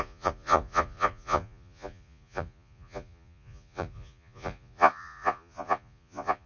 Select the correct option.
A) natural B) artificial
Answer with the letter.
B